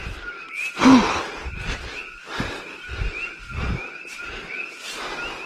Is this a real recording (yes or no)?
yes